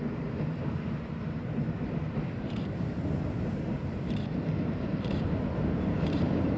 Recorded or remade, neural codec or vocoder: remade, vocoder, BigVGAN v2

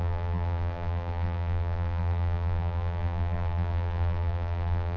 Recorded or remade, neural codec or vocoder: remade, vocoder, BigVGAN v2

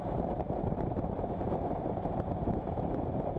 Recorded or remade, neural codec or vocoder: remade, vocoder, BigVGAN v2